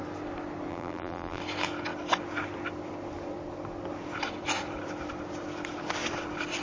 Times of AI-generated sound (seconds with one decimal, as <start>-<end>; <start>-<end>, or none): 0.7-1.4